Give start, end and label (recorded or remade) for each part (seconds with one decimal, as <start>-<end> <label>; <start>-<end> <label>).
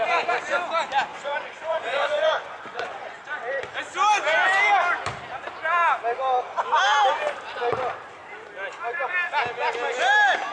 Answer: 0.0-1.1 recorded; 1.1-3.2 remade; 3.2-10.5 recorded